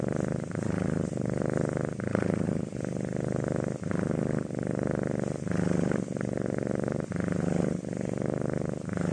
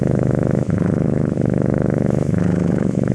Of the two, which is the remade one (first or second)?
second